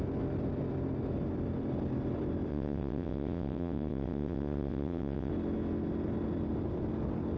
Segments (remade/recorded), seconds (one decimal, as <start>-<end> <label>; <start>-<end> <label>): 0.0-2.5 recorded; 2.5-5.3 remade; 5.3-7.4 recorded